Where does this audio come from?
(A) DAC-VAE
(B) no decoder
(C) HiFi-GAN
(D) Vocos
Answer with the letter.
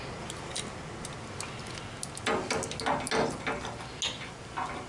B